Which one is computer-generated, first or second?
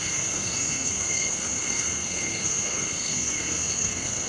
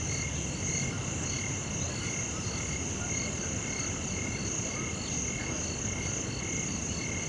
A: first